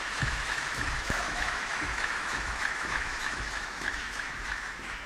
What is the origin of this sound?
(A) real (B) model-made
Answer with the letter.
B